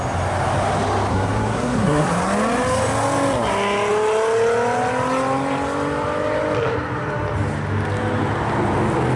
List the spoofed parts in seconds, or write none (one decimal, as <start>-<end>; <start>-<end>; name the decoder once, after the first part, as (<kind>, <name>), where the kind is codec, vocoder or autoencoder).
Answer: 1.1-2.1 (codec, SNAC)